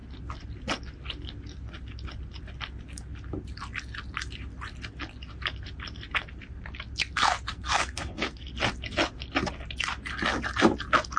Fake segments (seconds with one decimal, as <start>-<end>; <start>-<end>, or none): 7.5-8.5